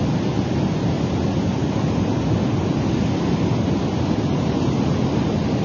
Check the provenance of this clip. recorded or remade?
recorded